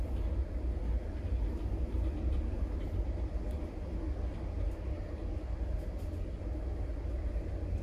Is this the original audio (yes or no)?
yes